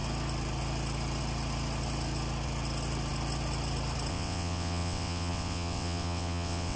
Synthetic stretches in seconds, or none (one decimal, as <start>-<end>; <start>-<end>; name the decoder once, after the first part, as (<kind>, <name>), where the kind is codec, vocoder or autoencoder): 4.1-6.8 (vocoder, WaveNeXt)